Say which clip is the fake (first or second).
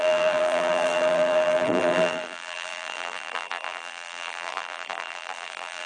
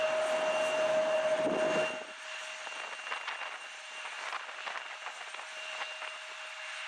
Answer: first